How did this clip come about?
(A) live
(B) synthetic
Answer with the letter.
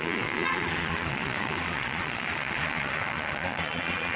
B